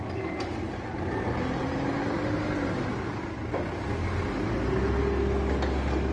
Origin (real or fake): real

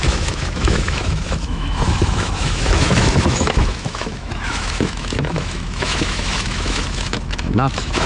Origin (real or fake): fake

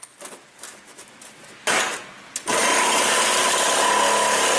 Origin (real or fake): real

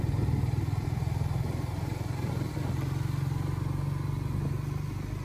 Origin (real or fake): real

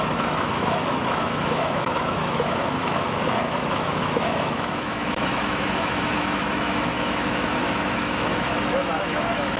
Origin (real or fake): fake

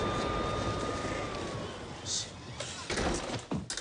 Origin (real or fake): real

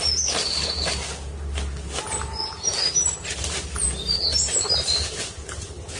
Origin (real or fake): real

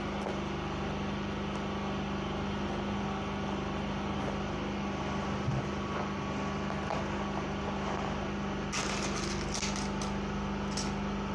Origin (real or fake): real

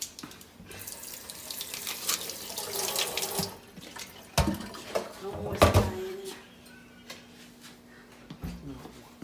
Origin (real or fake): real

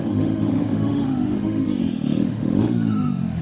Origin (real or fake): fake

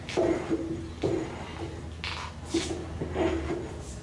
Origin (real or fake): real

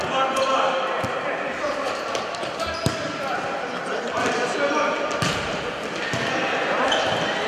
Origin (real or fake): real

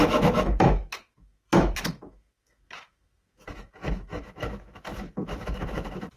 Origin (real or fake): fake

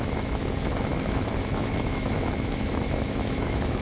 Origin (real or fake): fake